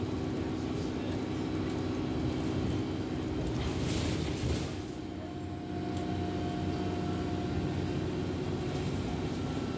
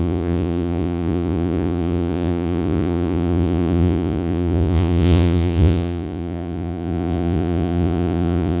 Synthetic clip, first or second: second